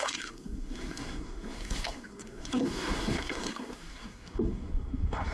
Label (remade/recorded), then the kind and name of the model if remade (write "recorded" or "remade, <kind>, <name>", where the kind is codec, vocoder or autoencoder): remade, codec, SNAC